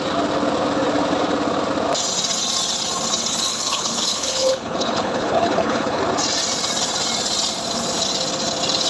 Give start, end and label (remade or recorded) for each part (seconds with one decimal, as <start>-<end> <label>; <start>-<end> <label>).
0.0-3.5 recorded; 3.5-6.0 remade; 6.0-8.9 recorded